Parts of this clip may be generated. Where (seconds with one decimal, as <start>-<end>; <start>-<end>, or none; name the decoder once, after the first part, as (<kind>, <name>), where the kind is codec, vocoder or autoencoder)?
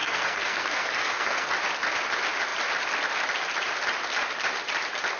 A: 0.0-1.5 (codec, SNAC)